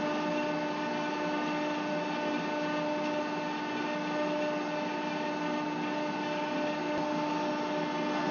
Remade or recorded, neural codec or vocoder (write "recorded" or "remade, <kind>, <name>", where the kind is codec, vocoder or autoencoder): recorded